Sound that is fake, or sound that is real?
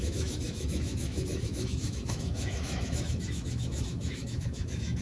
fake